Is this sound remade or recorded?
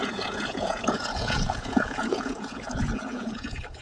remade